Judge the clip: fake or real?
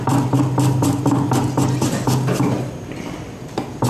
real